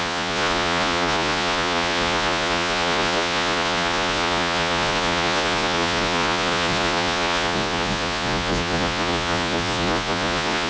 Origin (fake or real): fake